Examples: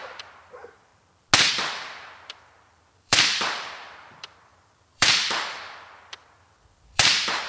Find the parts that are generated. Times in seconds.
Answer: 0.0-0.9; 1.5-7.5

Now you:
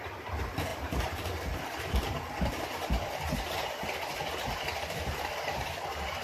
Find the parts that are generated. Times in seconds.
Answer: 0.7-3.1; 4.7-5.6

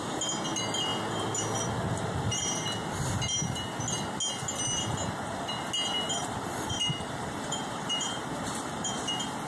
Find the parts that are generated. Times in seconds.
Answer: 6.2-9.0

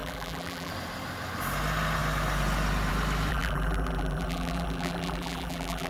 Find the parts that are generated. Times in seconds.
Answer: 0.0-0.7; 3.3-5.9